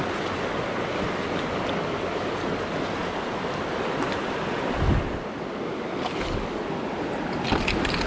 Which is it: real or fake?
real